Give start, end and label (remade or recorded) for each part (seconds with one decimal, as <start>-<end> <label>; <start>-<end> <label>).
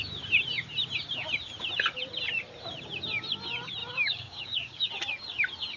0.0-3.8 recorded; 3.8-4.9 remade; 4.9-5.8 recorded